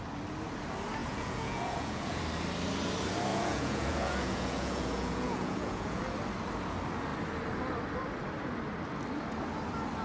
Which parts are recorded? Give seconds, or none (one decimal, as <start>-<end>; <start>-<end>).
0.0-1.0; 2.2-3.3; 6.0-10.0